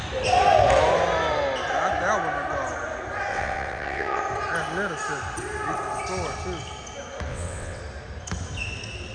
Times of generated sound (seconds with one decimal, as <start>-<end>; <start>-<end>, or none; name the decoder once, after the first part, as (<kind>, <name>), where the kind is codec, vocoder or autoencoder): 3.3-4.2 (vocoder, WaveNeXt); 7.3-7.8